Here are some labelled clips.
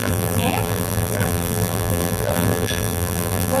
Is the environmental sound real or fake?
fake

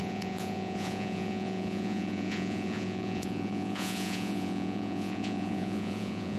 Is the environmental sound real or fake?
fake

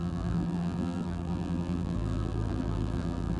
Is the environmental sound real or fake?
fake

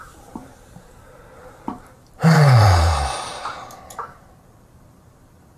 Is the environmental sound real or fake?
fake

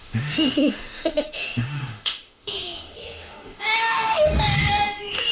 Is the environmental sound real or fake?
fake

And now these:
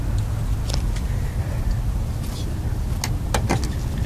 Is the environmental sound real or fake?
real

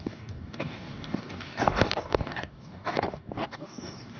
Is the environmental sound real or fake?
fake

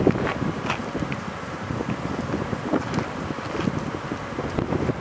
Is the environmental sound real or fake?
real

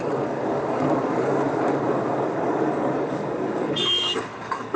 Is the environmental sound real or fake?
fake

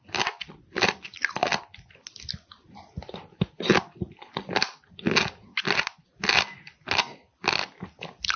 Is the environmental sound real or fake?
real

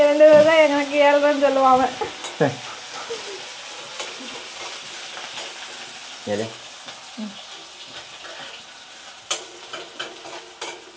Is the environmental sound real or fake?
real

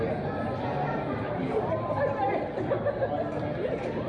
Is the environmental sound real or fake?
real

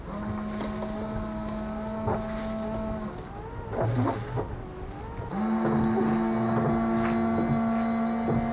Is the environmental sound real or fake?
real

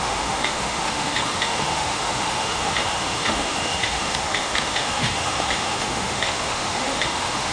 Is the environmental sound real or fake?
fake